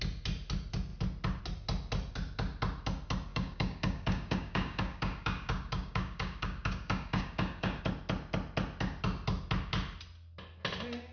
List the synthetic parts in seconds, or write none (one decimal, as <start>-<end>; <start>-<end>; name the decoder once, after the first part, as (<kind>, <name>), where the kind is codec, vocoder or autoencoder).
3.3-7.8 (codec, DAC)